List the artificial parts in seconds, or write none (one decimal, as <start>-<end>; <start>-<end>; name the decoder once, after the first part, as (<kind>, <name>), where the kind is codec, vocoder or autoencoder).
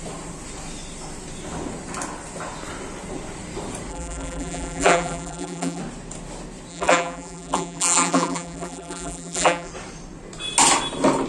3.9-5.8 (vocoder, BigVGAN v2); 6.7-9.7